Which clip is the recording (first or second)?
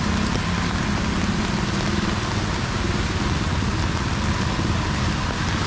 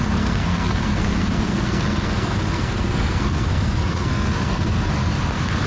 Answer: first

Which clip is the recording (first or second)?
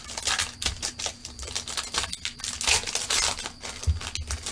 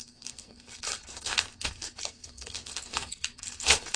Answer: first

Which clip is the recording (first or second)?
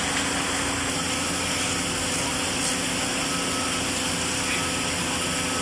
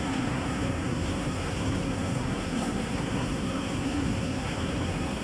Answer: first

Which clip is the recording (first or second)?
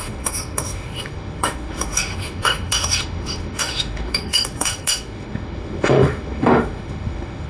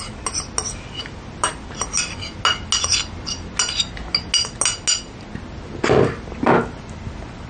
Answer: second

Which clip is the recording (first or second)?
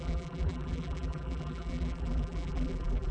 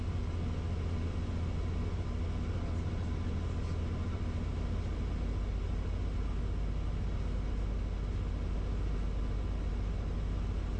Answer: second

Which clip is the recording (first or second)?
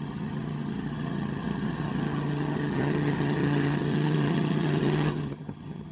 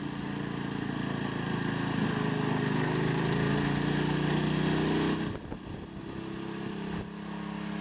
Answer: second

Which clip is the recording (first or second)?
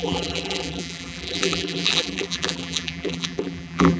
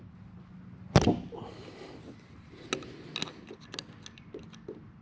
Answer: second